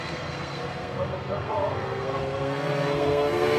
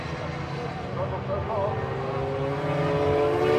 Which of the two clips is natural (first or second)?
second